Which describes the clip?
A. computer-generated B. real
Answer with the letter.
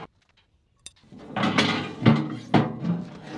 B